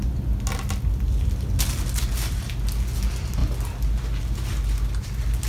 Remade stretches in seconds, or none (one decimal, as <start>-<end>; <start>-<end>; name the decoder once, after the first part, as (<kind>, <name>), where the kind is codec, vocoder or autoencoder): none